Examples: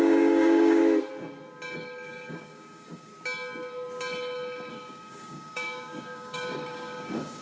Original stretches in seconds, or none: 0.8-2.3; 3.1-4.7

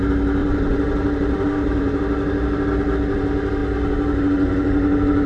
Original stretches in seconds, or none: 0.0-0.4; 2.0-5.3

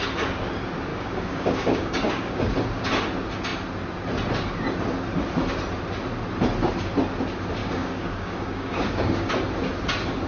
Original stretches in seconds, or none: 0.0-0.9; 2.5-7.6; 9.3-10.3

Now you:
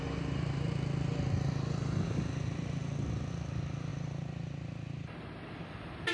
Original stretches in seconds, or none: 0.0-6.1

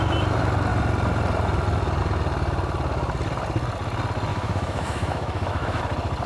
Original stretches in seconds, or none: 0.0-4.3; 5.8-6.3